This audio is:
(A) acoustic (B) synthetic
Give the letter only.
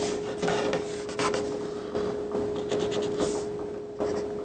A